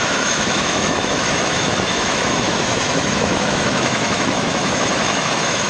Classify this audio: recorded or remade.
remade